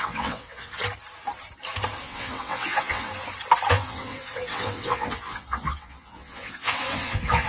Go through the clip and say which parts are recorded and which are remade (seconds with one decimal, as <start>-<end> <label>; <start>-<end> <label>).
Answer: 0.0-0.8 remade; 0.8-2.0 recorded; 2.0-3.1 remade; 3.1-3.7 recorded; 3.7-7.5 remade